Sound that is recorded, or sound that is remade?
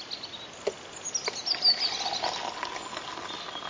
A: recorded